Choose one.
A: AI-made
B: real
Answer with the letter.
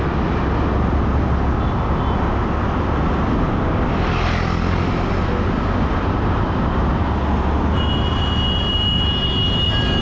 B